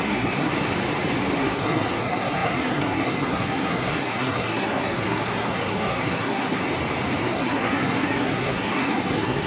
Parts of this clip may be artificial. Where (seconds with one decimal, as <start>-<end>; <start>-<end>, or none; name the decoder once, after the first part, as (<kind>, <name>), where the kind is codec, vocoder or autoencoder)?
0.0-0.5 (codec, SNAC); 1.4-6.6; 7.2-9.5